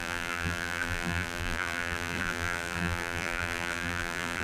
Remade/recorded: remade